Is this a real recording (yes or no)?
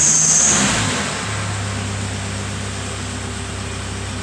yes